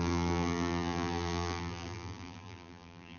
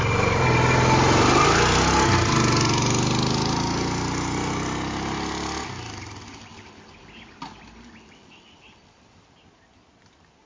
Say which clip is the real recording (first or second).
second